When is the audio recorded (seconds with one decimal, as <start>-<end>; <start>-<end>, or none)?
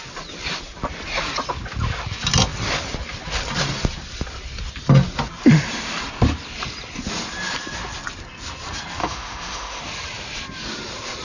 0.0-9.0; 9.8-11.2